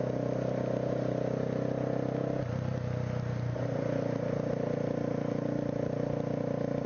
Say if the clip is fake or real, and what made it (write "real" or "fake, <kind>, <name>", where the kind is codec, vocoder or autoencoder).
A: real